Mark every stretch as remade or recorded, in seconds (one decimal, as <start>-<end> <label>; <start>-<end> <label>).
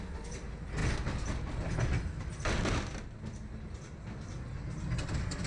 0.0-5.5 recorded